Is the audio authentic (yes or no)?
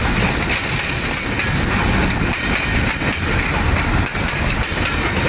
yes